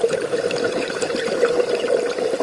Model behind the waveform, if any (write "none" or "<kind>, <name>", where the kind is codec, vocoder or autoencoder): none